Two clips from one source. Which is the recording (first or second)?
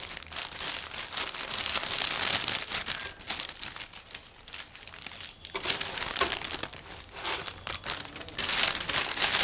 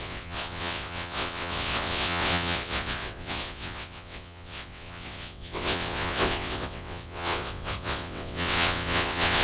first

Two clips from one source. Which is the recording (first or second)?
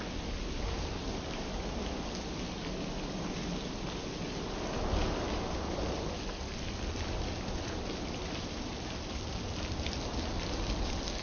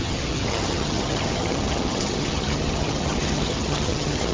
first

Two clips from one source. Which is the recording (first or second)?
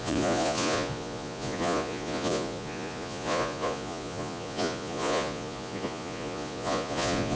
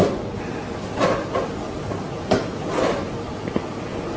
second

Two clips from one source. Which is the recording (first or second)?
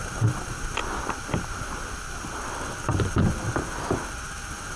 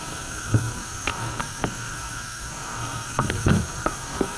first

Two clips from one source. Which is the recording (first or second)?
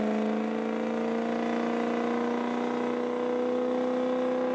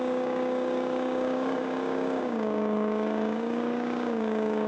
first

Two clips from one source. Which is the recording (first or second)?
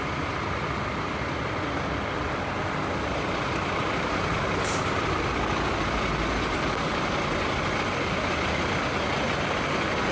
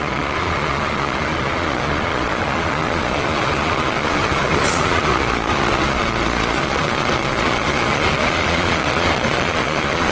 first